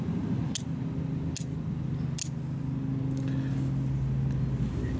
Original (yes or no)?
yes